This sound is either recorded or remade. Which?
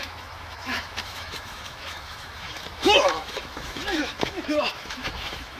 remade